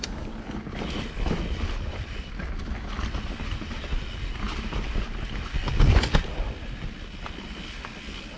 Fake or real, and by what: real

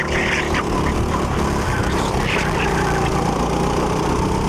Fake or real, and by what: real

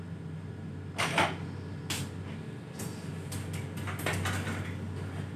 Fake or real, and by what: real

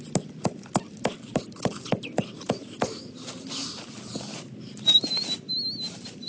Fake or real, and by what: real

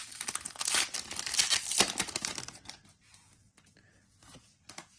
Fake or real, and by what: real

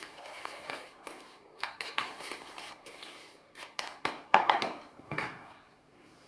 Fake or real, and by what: fake, codec, SNAC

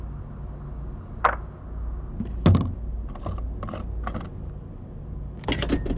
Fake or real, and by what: real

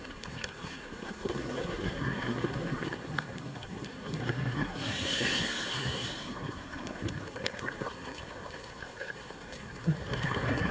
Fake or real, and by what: fake, codec, SNAC